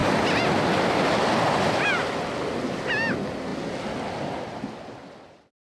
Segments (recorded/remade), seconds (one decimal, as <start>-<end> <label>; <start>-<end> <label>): 0.0-5.6 recorded